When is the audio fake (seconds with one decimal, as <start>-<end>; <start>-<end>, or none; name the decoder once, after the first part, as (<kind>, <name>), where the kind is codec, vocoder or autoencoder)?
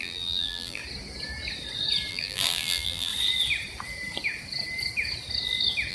0.0-0.8 (vocoder, BigVGAN v2); 2.1-3.1